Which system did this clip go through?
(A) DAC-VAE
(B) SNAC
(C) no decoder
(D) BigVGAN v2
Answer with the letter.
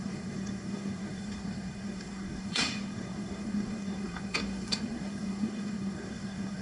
B